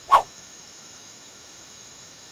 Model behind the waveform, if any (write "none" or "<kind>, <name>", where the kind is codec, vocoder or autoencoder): autoencoder, DAC-VAE